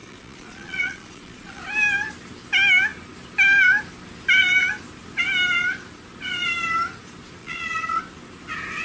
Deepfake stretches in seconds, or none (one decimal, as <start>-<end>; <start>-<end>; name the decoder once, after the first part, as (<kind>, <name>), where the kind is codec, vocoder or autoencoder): 0.0-1.6 (vocoder, Vocos); 7.4-8.0